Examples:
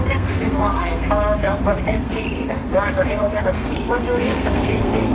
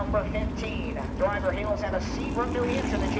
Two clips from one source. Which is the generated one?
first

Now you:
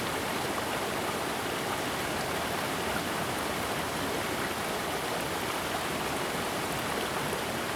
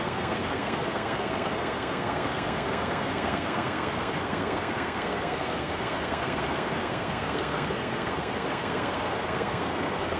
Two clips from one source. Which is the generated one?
second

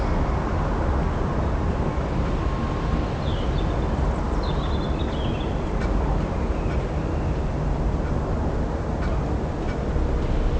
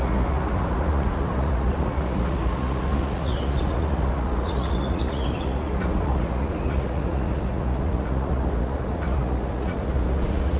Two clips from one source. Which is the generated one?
second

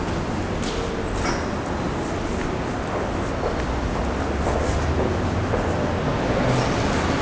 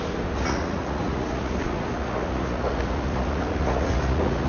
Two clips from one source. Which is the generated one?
second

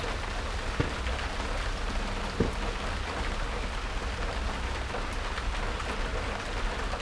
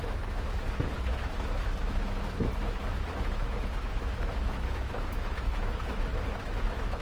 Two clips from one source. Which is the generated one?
second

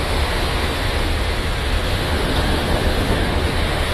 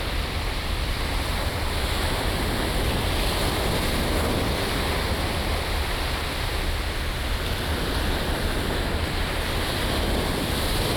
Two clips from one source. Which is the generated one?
first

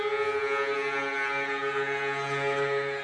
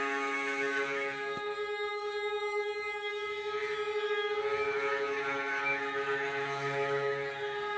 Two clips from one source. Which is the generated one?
second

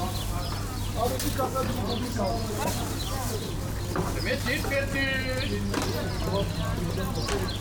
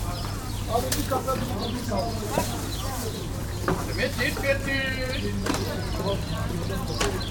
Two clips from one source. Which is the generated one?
second